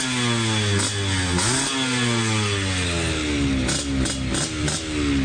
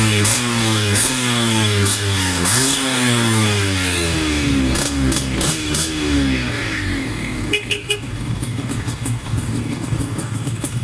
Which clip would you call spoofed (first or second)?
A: second